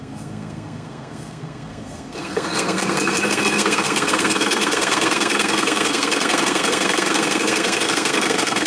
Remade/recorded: remade